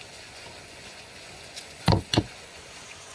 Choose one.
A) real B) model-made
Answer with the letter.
B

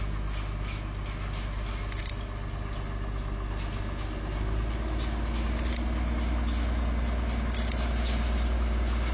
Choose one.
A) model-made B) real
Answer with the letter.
B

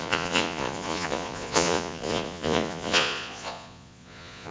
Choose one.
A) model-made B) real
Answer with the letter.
A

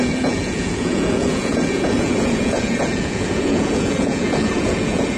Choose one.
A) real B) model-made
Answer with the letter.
B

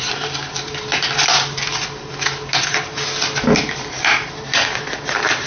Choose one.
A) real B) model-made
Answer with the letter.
A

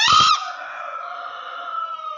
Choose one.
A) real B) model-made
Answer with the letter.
B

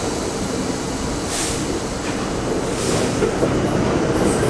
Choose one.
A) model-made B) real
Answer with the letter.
B